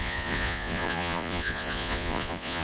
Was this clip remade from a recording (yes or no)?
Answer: yes